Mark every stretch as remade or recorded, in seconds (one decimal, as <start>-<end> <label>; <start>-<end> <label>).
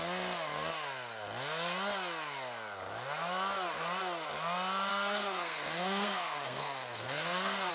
0.0-4.9 recorded; 4.9-7.7 remade